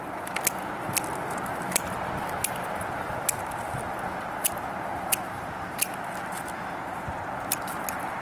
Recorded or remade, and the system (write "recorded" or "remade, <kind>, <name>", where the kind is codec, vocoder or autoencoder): recorded